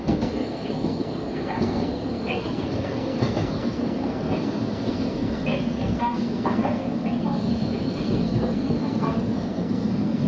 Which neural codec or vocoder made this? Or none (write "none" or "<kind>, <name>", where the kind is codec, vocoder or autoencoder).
codec, SNAC